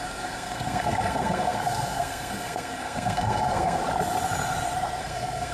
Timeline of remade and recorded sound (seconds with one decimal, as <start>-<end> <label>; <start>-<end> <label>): 0.0-3.8 remade; 3.8-5.0 recorded; 5.0-5.5 remade